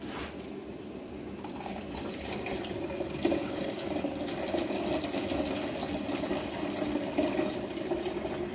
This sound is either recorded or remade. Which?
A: recorded